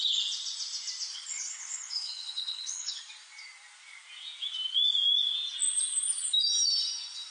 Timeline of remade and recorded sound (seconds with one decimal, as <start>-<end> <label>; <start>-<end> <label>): 0.0-1.1 recorded; 1.1-3.0 remade; 3.0-7.3 recorded